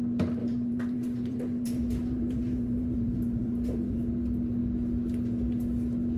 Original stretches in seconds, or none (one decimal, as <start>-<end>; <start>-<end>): 0.0-0.4; 4.1-6.2